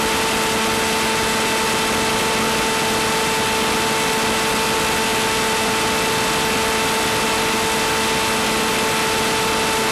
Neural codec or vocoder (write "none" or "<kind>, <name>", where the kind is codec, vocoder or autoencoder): none